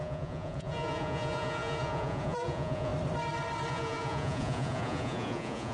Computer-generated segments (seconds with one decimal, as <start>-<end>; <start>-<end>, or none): 0.0-2.9; 3.7-5.7